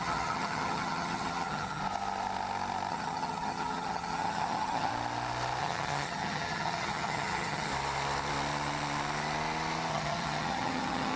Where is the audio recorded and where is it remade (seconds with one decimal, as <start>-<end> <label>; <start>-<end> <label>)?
0.0-1.8 remade; 1.8-2.9 recorded; 2.9-4.9 remade; 4.9-5.6 recorded; 5.6-7.7 remade; 7.7-9.9 recorded; 9.9-11.2 remade